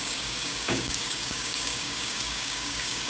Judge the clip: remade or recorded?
remade